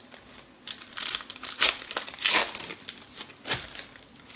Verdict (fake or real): real